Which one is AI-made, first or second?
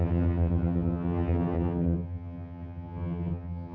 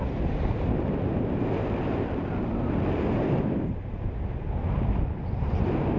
first